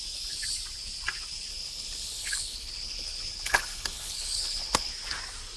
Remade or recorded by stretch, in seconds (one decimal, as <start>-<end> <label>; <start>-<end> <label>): 0.0-1.5 recorded; 1.5-4.9 remade; 4.9-5.6 recorded